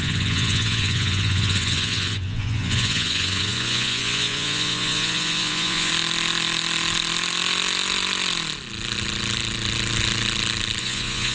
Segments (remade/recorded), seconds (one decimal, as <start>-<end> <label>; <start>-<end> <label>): 0.0-5.9 remade; 5.9-10.8 recorded; 10.8-11.3 remade